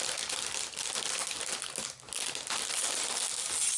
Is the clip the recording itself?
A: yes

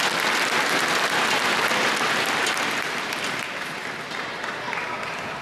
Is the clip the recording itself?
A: yes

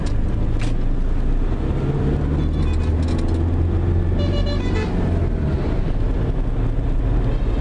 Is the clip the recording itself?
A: yes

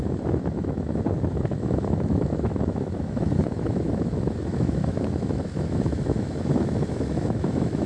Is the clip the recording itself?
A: no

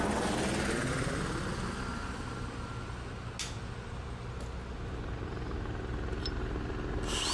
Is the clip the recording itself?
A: yes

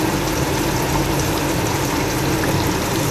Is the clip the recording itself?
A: yes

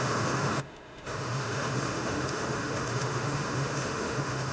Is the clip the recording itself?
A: no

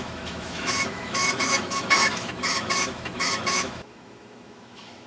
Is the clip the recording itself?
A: no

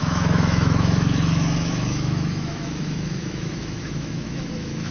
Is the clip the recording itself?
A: no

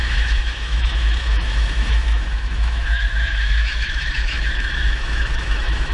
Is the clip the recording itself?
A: no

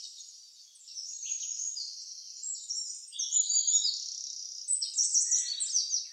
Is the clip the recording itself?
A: yes